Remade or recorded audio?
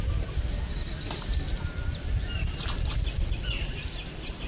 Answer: recorded